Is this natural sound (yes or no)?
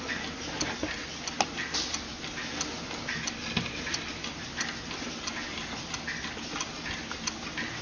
yes